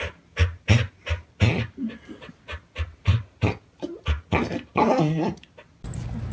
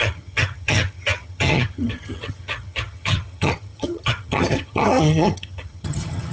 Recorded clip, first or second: first